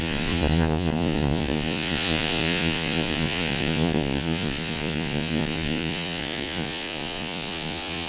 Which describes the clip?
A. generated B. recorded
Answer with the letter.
A